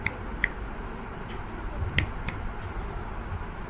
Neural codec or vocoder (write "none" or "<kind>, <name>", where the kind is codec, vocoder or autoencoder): none